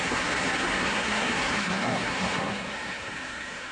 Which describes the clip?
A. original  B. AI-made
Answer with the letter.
B